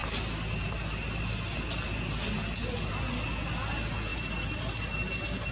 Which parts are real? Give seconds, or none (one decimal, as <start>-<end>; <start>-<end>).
0.0-5.5